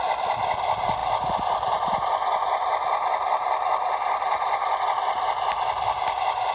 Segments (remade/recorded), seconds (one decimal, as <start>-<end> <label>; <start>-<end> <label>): 0.0-6.5 recorded